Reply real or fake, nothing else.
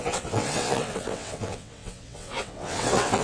fake